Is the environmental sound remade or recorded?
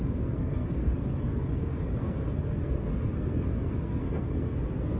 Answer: remade